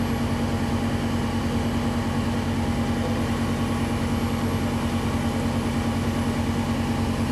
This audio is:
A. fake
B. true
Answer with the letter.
B